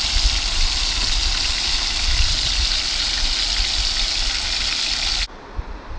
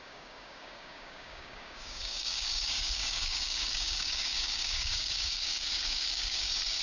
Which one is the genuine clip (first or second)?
first